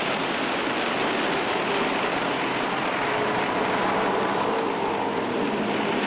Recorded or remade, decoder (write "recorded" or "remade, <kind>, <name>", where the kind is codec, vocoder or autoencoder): recorded